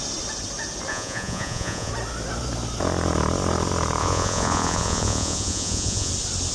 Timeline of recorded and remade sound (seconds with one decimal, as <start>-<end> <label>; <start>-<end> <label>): 0.0-0.9 recorded; 0.9-1.9 remade; 1.9-4.0 recorded; 4.0-6.1 remade; 6.1-6.5 recorded